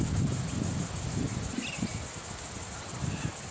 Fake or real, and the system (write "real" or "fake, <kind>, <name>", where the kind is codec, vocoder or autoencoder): real